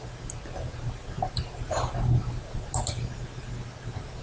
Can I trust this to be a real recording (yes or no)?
yes